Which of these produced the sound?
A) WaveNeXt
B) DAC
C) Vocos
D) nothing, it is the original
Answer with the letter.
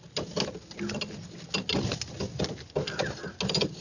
D